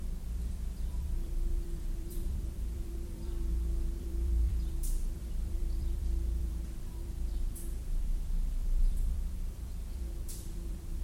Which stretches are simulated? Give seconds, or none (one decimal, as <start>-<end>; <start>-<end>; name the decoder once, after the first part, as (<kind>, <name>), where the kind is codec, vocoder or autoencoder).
0.0-3.3 (vocoder, BigVGAN v2); 4.0-11.0